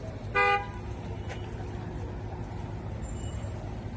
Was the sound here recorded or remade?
recorded